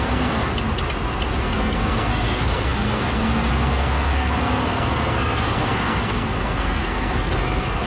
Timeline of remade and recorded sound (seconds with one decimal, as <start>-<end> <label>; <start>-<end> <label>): 0.0-0.5 remade; 0.5-1.4 recorded; 1.4-7.9 remade